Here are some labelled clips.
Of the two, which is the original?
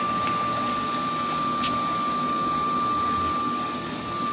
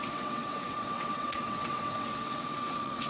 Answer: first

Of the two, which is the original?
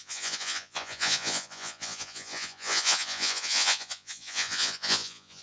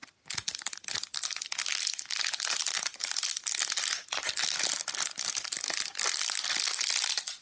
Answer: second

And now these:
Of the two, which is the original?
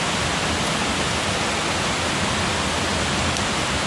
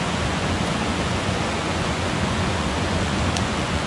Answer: first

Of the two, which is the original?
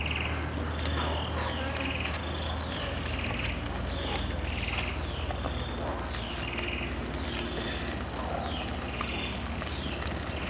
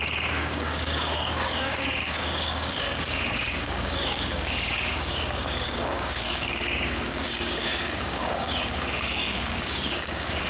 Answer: first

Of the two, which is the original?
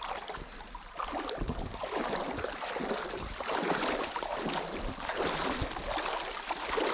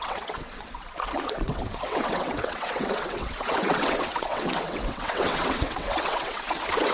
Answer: first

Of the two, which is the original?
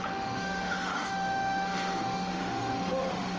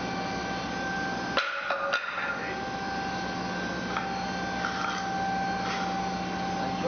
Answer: second